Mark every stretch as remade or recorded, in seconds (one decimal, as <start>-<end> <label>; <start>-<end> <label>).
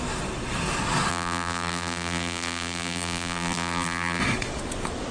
0.0-1.1 recorded; 1.1-4.2 remade; 4.2-5.1 recorded